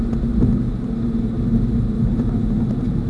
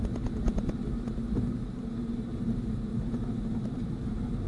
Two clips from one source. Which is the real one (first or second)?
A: first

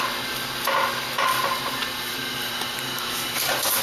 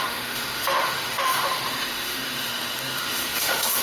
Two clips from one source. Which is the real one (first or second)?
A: first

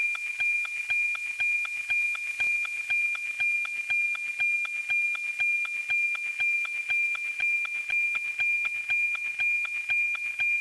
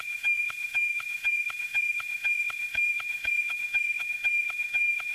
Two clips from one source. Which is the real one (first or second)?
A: first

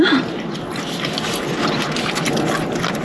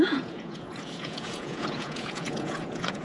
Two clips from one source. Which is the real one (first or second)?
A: first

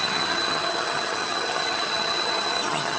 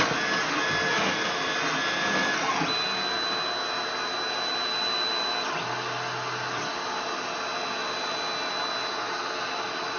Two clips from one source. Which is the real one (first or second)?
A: second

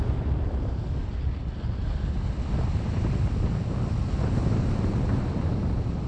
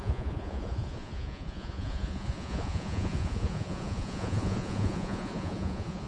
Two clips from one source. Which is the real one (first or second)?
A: first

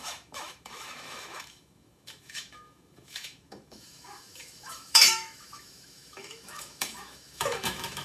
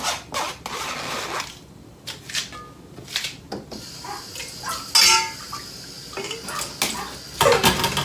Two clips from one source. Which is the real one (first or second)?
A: second